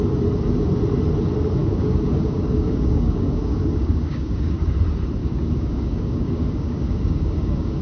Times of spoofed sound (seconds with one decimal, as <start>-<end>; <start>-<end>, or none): 1.6-4.8; 5.2-7.8